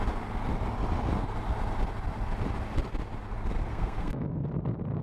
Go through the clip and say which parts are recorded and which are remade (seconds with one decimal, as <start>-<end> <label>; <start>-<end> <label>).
0.0-3.7 recorded; 3.7-4.5 remade; 4.5-5.0 recorded